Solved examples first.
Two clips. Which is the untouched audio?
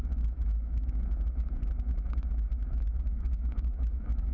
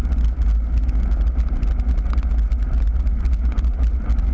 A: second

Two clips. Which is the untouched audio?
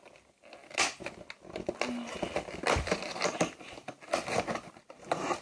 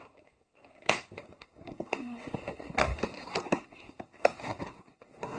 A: first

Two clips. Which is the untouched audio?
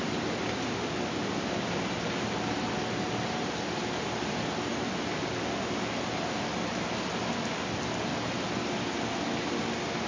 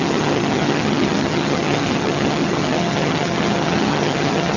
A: first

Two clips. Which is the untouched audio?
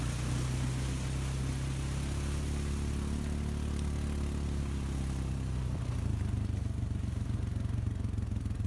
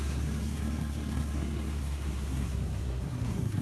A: first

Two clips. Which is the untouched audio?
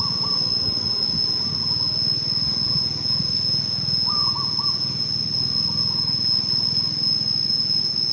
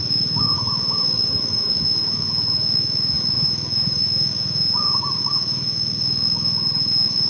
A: first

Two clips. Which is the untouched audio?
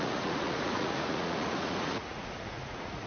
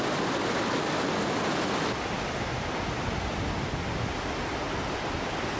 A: second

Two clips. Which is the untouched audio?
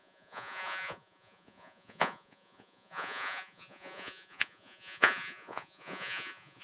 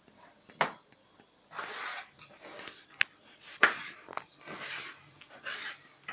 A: second